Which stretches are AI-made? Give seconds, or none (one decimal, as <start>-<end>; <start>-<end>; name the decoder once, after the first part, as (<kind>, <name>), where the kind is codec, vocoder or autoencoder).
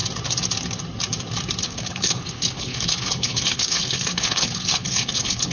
1.6-5.5 (codec, HILCodec)